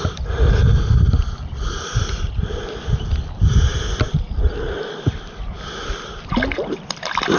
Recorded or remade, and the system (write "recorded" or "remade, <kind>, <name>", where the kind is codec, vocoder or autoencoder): recorded